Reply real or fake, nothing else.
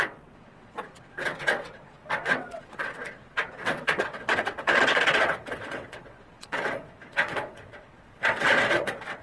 fake